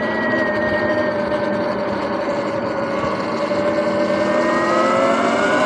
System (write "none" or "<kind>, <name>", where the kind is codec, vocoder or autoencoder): none